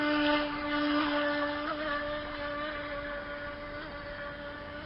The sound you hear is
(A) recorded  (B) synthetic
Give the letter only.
A